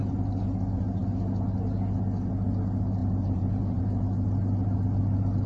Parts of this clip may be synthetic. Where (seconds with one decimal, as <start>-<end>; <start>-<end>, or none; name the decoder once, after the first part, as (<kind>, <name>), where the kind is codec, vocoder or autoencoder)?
3.0-3.8 (vocoder, BigVGAN v2)